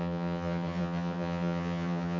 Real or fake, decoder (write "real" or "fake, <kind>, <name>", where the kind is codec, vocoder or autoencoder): fake, vocoder, HiFi-GAN